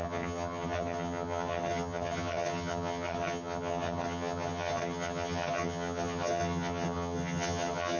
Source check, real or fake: fake